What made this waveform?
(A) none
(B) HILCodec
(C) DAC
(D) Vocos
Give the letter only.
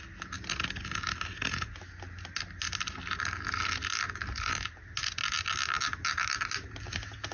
A